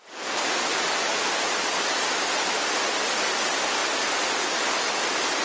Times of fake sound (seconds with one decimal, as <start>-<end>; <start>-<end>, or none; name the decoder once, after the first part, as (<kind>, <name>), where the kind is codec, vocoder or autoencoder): none